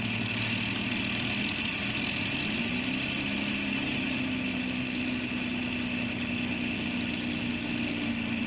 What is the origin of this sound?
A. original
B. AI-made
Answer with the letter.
A